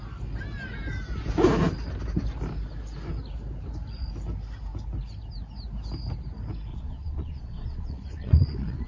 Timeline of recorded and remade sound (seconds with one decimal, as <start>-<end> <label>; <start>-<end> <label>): 0.0-6.7 recorded; 6.7-8.9 remade